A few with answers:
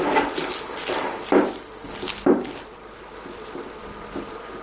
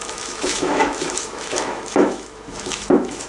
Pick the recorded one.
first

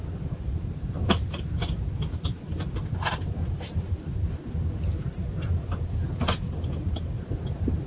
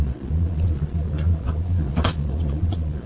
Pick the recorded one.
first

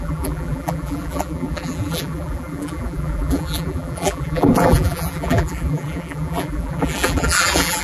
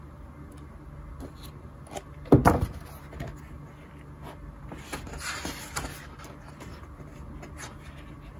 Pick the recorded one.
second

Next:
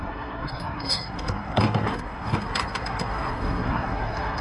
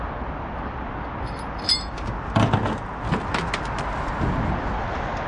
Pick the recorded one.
second